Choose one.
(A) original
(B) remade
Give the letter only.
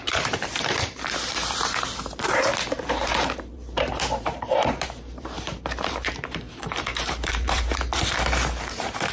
B